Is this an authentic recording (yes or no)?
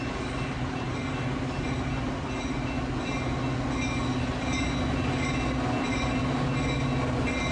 yes